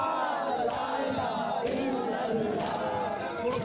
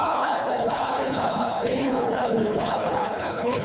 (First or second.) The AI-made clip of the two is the second